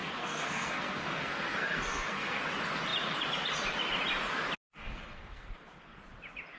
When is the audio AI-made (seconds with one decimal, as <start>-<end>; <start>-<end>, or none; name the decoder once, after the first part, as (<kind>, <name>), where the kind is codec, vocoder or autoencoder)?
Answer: 0.0-2.4 (codec, SNAC); 4.7-6.0